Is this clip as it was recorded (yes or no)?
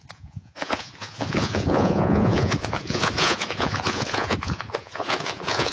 no